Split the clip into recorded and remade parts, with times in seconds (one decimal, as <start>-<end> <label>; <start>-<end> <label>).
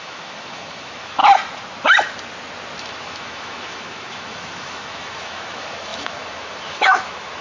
0.0-1.2 remade; 1.2-2.8 recorded; 2.8-7.4 remade